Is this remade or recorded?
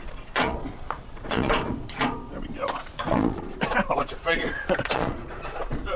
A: remade